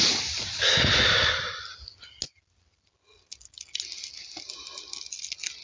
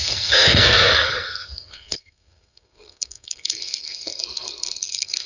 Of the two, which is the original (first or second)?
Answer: first